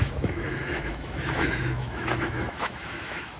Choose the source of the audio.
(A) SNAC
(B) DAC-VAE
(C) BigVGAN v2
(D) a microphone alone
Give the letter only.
B